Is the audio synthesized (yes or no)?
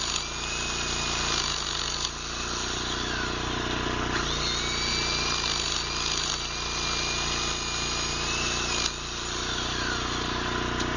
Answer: no